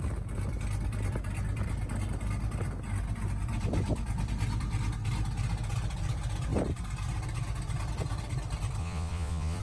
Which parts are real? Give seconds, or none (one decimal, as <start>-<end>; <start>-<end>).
0.0-8.8